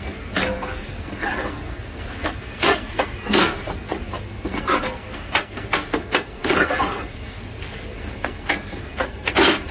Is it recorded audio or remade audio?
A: remade